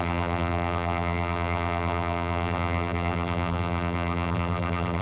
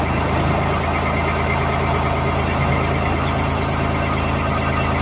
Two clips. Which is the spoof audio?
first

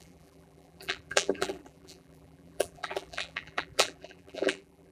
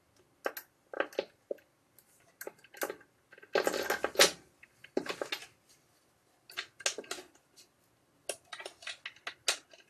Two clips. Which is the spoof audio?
first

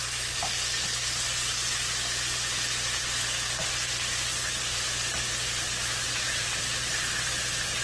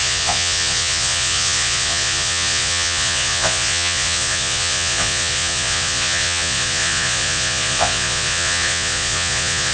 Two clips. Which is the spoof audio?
second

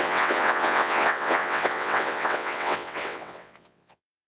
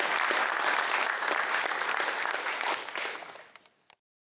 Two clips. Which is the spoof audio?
first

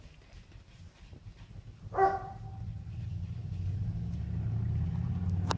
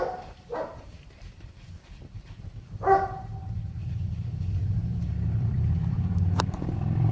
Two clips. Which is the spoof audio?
second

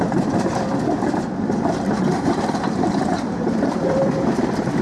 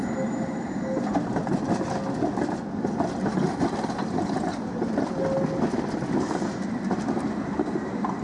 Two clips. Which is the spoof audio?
first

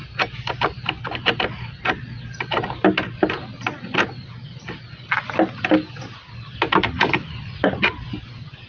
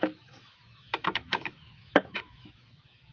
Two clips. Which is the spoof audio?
second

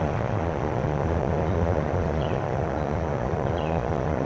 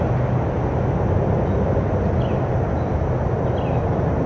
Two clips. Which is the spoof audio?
first